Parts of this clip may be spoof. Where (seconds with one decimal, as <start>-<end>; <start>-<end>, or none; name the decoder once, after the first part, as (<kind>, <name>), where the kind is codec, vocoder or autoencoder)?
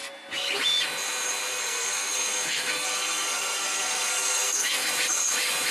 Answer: 1.5-4.9 (codec, SNAC)